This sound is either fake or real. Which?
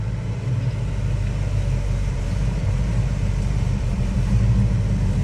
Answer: real